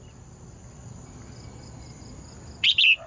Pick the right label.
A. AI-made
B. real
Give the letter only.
B